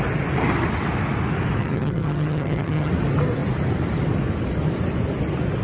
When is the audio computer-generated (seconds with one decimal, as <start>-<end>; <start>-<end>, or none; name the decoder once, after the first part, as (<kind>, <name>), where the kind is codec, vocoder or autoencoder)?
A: 1.6-2.9 (vocoder, HiFi-GAN)